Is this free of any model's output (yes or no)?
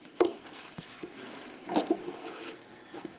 no